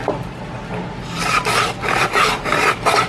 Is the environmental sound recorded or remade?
recorded